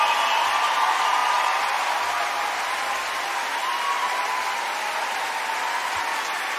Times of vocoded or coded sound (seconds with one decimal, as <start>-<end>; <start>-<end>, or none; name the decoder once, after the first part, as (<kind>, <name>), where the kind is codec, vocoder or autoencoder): none